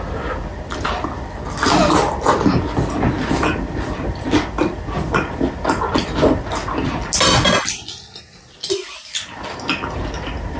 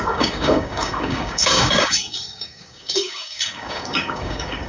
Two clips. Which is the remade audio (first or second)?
second